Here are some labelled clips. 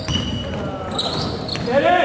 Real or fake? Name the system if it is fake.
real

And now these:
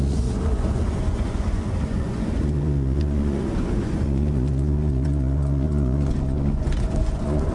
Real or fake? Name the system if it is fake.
fake, vocoder, Vocos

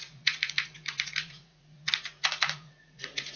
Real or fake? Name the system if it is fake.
fake, vocoder, Vocos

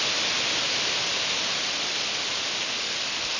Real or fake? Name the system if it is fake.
real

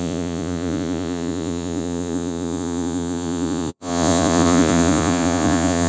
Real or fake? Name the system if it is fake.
fake, vocoder, Vocos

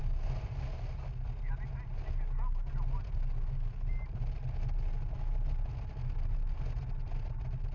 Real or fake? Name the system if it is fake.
real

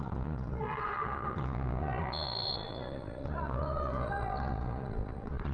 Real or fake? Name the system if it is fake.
fake, vocoder, Vocos